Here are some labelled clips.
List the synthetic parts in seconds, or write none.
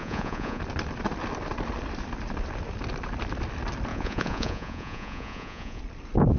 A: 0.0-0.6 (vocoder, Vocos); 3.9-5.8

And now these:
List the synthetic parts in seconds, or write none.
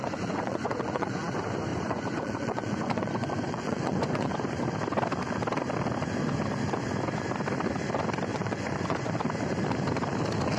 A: 0.0-1.2 (vocoder, Vocos); 1.7-4.3; 8.3-9.1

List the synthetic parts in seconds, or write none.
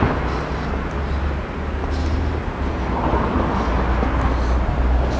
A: none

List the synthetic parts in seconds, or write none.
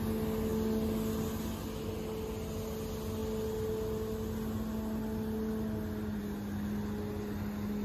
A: none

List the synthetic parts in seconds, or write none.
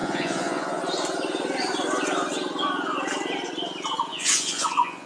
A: 0.0-0.8 (vocoder, Vocos); 4.1-5.1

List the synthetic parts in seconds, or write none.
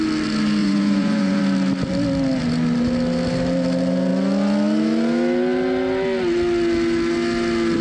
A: 0.6-1.4 (vocoder, Vocos)